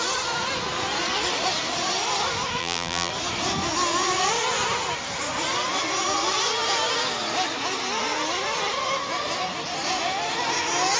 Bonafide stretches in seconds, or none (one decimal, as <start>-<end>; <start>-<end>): 0.0-2.6; 3.1-11.0